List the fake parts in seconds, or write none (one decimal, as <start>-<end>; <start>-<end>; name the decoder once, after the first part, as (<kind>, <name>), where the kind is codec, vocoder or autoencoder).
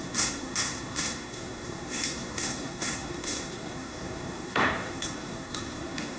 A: 0.0-6.2 (codec, SNAC)